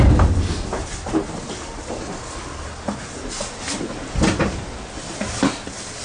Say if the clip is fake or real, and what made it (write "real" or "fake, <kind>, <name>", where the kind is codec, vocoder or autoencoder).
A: real